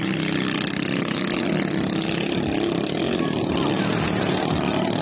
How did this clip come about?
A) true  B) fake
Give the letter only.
A